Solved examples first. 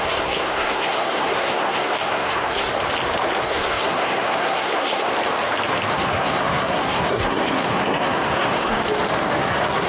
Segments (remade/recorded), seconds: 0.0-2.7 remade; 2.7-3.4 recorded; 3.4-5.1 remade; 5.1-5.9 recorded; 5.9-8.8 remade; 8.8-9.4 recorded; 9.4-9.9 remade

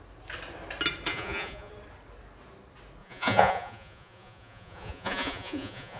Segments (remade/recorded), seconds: 0.0-1.1 recorded; 1.1-1.7 remade; 1.7-3.0 recorded; 3.0-6.0 remade